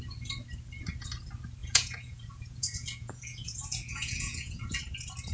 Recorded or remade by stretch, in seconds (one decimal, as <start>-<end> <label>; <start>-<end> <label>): 0.0-1.6 recorded; 1.6-4.8 remade; 4.8-5.3 recorded